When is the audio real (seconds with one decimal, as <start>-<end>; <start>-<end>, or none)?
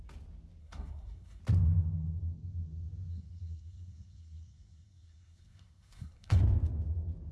0.0-0.6; 1.4-3.1; 6.4-7.3